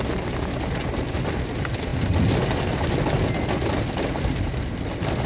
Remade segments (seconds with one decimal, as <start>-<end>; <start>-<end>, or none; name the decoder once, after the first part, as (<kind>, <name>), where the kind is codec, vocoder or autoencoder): none